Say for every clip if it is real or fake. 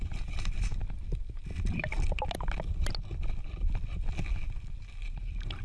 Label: real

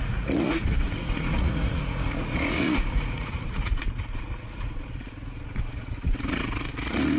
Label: fake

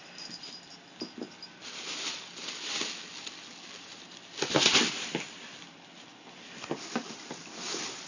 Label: real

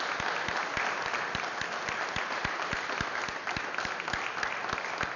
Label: real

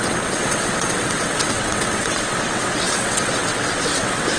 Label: fake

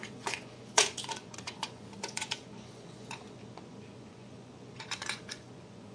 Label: fake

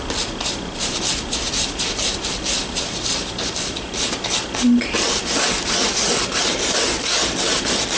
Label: real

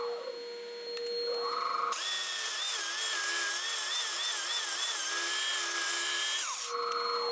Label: real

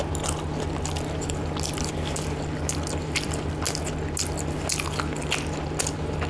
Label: real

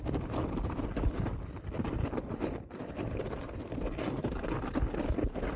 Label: real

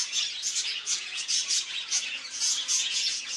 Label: fake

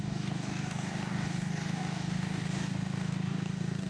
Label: fake